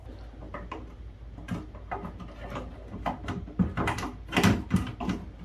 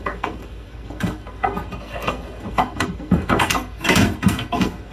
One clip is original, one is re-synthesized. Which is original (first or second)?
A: first